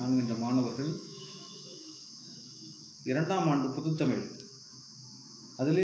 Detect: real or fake fake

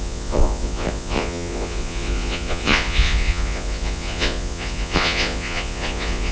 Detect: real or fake fake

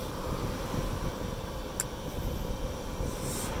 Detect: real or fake real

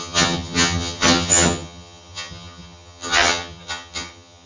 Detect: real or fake fake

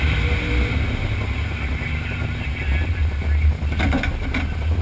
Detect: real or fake real